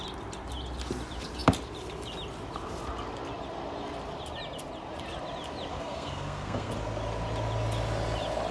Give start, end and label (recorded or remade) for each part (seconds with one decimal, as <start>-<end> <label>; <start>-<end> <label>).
0.0-5.7 recorded; 5.7-6.7 remade; 6.7-8.5 recorded